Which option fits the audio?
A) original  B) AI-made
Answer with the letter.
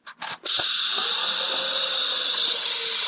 A